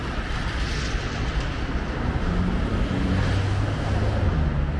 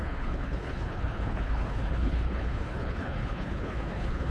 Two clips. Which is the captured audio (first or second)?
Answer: first